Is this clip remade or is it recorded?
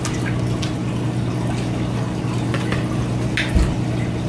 recorded